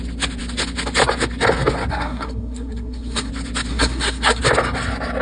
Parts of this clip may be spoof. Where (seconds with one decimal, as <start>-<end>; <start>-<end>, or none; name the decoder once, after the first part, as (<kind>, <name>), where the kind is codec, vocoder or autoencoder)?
1.9-3.3 (codec, SNAC); 3.7-4.4

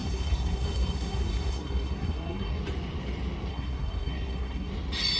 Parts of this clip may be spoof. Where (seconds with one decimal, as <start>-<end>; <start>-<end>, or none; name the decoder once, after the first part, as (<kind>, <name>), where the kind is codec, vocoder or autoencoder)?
0.0-2.6 (codec, SNAC); 3.5-4.7

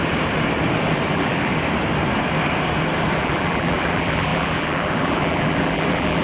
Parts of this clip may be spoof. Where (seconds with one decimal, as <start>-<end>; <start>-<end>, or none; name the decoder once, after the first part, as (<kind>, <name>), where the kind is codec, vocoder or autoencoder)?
1.1-1.5 (vocoder, BigVGAN v2); 3.2-6.2